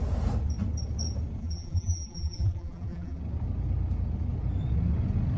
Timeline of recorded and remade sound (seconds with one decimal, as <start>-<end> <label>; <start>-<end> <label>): 0.0-1.4 recorded; 1.4-3.2 remade; 3.2-5.4 recorded